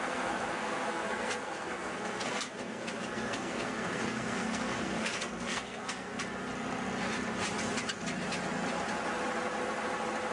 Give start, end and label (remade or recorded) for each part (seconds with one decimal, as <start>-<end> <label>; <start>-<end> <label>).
0.0-6.2 remade; 6.2-10.3 recorded